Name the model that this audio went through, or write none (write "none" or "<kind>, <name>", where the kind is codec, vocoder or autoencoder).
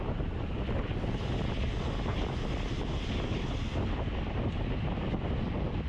none